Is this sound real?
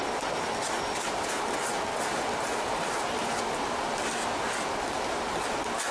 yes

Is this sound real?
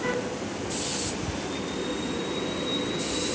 yes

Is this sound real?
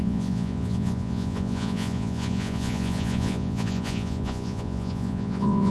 no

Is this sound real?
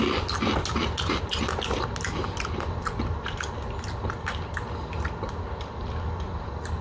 yes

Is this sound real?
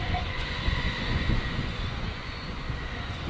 no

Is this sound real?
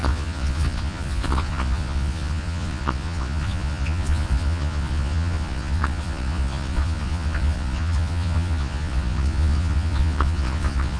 no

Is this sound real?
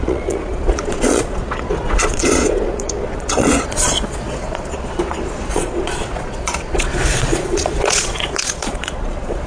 no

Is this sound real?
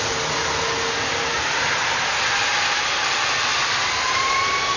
yes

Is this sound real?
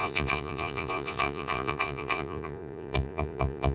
no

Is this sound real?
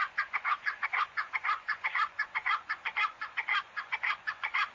no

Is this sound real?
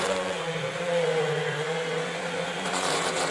no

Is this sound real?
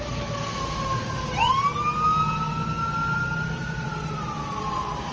yes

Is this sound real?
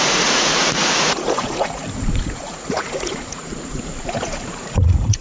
no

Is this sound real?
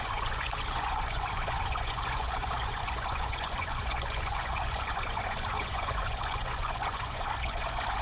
no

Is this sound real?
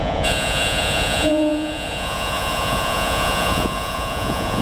no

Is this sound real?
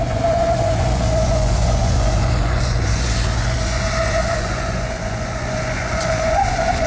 no